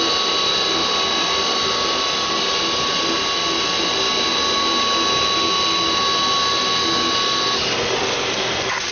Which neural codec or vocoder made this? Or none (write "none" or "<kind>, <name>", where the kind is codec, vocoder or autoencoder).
none